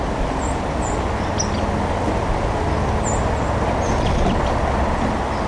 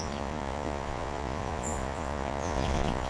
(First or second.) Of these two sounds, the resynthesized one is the second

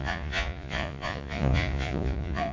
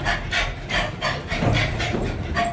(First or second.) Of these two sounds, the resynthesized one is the first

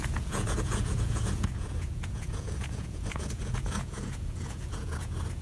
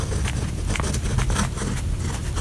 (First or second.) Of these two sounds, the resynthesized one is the first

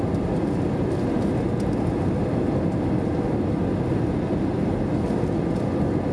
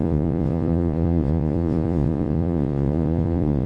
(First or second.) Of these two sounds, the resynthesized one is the second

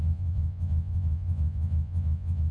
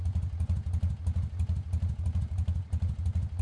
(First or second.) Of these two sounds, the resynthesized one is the first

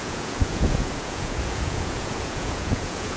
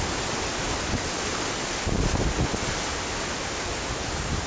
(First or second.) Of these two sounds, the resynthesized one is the first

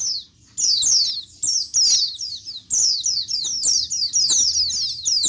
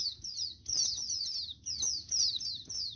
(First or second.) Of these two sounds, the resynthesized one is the second